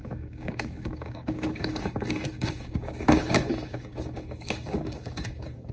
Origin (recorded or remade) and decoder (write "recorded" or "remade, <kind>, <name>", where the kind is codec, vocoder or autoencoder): remade, codec, DAC